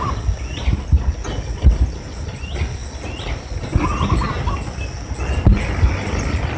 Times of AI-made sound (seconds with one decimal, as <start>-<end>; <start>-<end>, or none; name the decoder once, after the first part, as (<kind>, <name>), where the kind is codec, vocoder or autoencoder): none